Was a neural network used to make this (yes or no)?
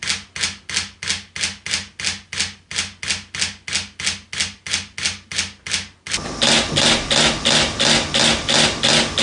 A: no